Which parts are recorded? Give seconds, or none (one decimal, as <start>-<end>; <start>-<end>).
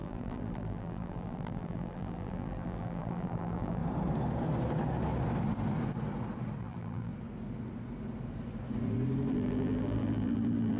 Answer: 3.8-6.6; 7.1-9.3